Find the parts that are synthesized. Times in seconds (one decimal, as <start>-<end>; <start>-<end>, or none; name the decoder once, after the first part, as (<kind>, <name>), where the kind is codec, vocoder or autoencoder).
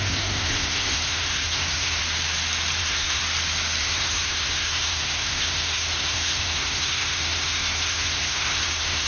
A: 0.0-2.0 (codec, SNAC); 2.8-3.2; 3.8-9.1